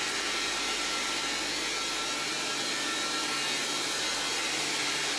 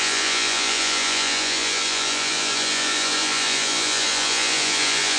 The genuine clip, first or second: first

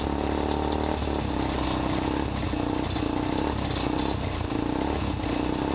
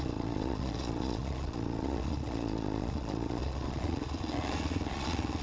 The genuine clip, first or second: first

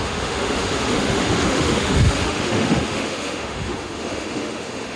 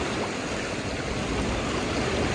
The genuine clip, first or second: second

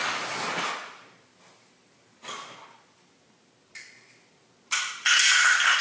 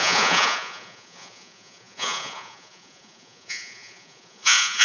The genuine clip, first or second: first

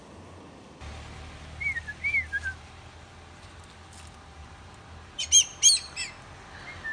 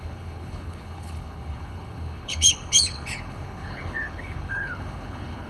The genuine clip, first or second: first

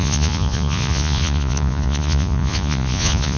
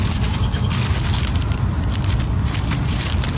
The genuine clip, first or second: second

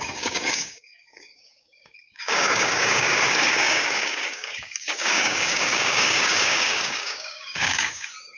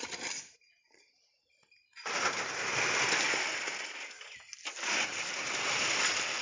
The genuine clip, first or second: second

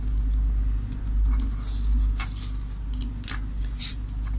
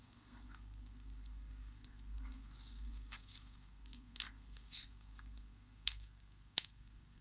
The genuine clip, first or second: first